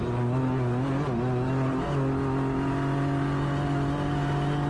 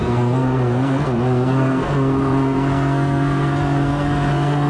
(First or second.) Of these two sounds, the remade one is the second